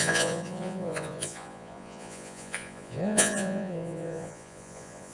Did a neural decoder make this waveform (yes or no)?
yes